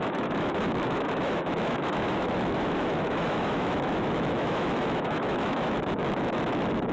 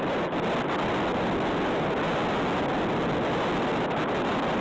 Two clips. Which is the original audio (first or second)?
second